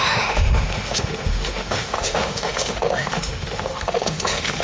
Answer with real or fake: fake